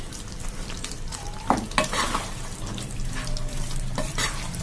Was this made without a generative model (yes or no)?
no